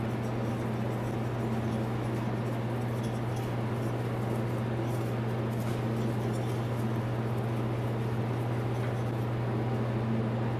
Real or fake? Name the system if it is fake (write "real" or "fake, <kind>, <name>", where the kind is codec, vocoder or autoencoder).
real